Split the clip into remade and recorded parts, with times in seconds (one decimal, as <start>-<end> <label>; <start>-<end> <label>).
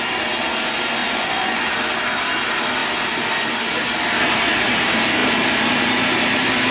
0.0-1.0 recorded; 1.0-1.6 remade; 1.6-6.7 recorded